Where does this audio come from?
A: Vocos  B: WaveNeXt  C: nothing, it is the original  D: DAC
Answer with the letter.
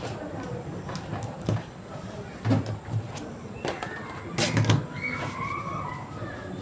C